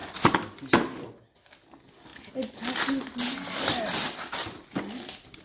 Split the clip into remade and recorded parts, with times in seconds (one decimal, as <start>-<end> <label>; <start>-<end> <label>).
0.0-5.4 recorded